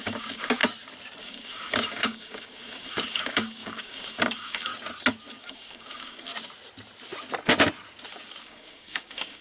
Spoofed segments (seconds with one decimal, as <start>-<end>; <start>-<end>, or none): 0.0-0.6; 1.2-4.7; 5.4-6.3; 8.4-9.4